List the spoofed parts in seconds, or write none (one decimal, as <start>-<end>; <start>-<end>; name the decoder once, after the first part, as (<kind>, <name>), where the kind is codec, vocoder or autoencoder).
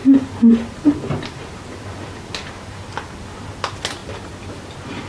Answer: none